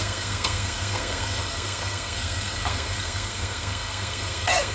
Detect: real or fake fake